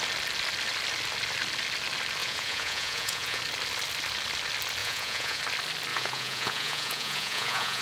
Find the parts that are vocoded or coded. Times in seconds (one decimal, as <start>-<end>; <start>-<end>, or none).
2.2-3.4; 4.8-5.4; 5.9-7.8